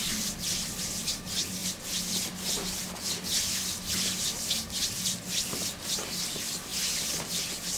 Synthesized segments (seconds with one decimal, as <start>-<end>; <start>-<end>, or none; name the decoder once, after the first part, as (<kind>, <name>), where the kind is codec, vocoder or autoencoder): 1.6-5.9 (vocoder, BigVGAN v2); 6.7-7.3